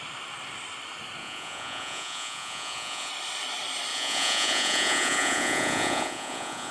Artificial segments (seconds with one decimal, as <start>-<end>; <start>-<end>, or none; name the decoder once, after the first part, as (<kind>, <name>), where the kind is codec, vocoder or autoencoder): 1.2-3.1 (vocoder, Vocos); 3.9-6.7